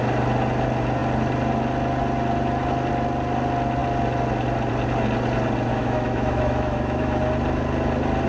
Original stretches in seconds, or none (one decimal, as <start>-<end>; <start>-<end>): 0.0-5.7; 7.2-8.3